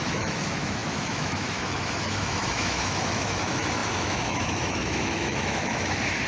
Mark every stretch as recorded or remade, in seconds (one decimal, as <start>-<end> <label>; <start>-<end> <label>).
0.0-6.3 remade